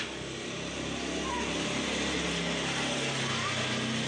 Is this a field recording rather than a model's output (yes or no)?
yes